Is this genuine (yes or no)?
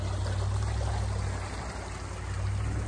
yes